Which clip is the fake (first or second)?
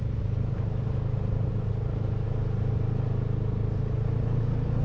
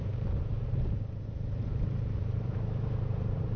second